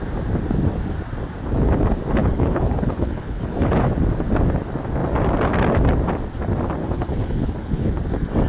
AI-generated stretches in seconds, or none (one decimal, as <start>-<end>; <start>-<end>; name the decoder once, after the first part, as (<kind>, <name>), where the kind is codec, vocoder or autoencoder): 2.2-3.9 (codec, HILCodec); 6.8-7.9